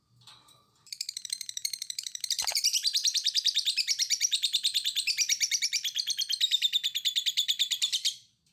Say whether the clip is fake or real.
fake